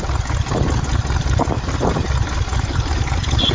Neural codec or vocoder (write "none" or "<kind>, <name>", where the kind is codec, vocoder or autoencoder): vocoder, BigVGAN v2